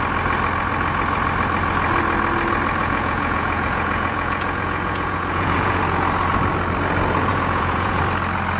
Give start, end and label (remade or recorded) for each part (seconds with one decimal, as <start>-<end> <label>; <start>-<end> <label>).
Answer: 0.0-2.8 recorded; 2.8-5.8 remade; 5.8-7.3 recorded; 7.3-8.0 remade; 8.0-8.6 recorded